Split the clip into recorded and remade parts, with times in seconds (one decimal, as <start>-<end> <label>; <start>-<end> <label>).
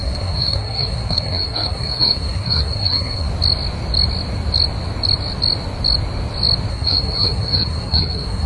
0.0-3.3 remade; 3.3-6.7 recorded; 6.7-8.5 remade